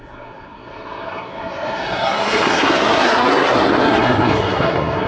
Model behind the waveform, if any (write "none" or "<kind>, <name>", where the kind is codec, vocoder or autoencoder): codec, SNAC